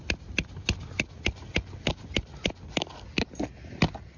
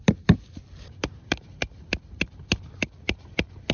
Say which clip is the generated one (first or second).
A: second